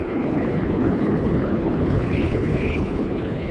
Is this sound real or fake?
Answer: fake